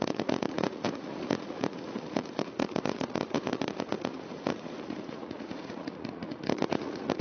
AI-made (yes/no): yes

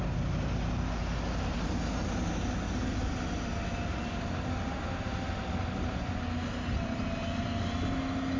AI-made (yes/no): no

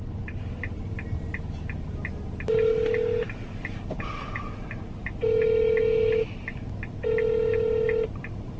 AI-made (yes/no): no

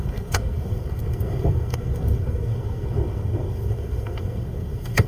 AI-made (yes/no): yes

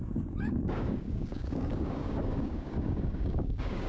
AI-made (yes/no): yes